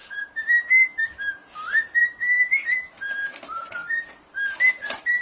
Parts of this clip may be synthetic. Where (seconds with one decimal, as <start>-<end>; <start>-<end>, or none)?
none